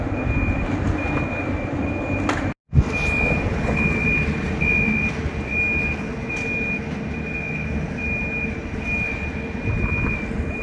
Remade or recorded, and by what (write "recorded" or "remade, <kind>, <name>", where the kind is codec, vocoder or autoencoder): recorded